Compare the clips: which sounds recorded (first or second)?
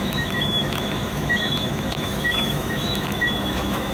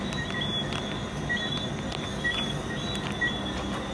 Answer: second